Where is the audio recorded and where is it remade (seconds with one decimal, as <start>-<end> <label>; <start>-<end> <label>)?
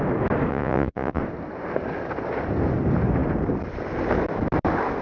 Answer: 0.0-0.5 recorded; 0.5-1.2 remade; 1.2-5.0 recorded